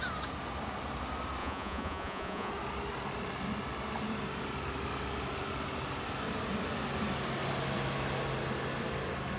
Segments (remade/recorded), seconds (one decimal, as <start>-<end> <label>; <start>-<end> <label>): 0.0-1.4 recorded; 1.4-2.5 remade; 2.5-9.4 recorded